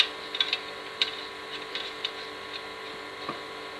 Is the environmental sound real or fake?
fake